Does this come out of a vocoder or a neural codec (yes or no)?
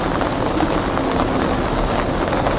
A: no